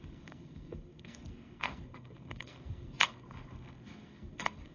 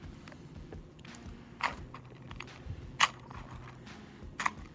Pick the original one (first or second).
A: second